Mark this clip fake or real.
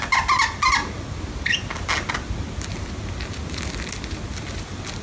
real